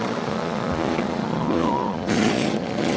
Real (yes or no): no